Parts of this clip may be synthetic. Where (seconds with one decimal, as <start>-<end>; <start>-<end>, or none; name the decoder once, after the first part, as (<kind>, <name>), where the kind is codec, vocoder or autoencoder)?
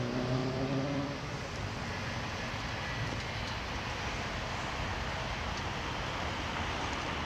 0.4-3.2 (vocoder, BigVGAN v2)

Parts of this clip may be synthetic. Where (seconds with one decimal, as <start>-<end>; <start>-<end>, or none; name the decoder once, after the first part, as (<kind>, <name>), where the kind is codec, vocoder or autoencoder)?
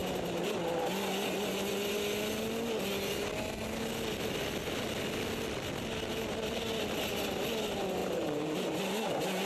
8.0-8.8 (vocoder, BigVGAN v2)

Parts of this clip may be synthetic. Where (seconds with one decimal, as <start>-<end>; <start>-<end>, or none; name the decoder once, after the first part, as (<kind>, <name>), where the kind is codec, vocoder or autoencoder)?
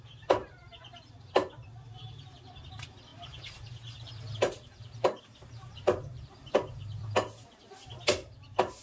0.0-0.4 (vocoder, BigVGAN v2); 2.7-8.8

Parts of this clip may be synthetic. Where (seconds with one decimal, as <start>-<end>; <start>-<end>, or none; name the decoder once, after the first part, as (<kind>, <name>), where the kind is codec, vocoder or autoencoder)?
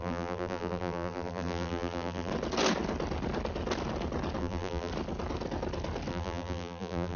0.0-2.3 (vocoder, BigVGAN v2); 4.4-4.9; 6.1-7.2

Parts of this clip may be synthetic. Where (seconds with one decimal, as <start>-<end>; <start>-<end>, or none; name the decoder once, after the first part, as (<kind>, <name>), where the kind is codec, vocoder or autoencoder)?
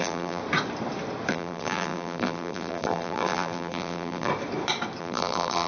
0.0-0.4 (vocoder, BigVGAN v2); 1.3-4.3; 5.0-5.7